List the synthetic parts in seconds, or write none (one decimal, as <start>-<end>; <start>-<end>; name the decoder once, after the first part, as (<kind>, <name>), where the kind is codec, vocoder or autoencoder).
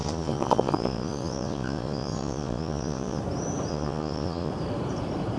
0.0-3.2 (vocoder, Vocos); 3.7-4.5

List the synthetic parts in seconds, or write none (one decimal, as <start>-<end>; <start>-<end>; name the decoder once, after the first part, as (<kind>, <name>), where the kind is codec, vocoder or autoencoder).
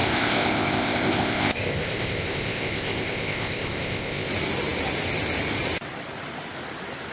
0.0-4.3 (codec, ZipCodec)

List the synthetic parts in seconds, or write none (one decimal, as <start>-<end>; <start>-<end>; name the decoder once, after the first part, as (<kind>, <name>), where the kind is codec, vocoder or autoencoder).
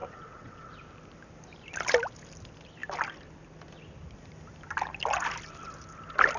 0.0-0.7 (vocoder, WaveNeXt)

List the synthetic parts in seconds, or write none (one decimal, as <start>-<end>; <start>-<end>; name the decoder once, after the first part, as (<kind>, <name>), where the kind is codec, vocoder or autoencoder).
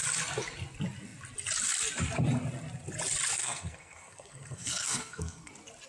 3.4-5.5 (codec, SNAC)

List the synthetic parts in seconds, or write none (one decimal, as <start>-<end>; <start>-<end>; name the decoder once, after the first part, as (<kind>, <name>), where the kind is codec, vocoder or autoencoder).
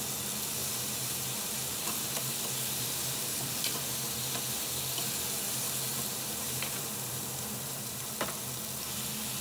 0.6-4.3 (vocoder, BigVGAN v2); 5.9-8.0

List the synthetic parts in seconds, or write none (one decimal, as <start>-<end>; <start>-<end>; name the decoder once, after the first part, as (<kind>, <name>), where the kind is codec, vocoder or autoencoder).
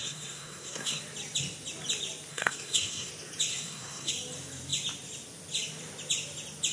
0.0-1.0 (codec, SNAC); 2.3-3.1; 3.5-4.1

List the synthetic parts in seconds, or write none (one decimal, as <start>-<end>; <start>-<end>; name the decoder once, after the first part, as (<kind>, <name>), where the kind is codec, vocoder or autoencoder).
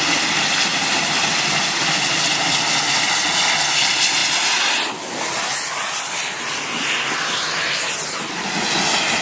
none